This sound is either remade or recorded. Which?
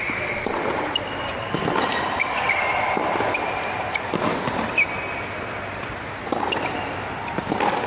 recorded